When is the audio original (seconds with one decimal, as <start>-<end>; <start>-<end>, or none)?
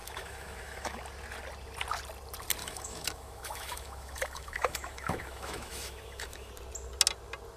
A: 1.0-2.6; 6.5-7.6